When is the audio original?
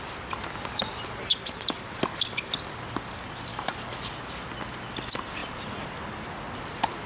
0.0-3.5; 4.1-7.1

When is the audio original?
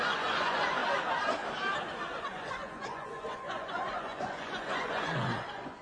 0.8-2.2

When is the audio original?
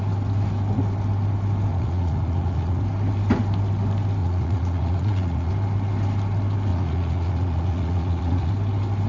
0.0-1.7; 2.8-4.2; 5.5-6.7; 8.5-9.1